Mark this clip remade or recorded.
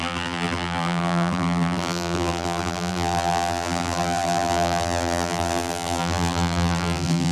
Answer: remade